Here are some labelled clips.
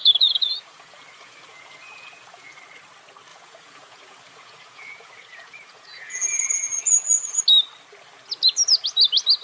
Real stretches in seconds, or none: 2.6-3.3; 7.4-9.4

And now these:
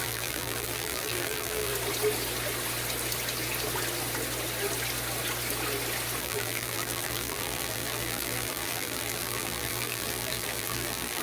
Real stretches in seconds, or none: 1.7-6.2